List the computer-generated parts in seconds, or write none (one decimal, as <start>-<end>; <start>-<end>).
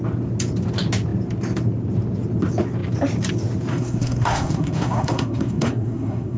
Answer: 3.7-6.4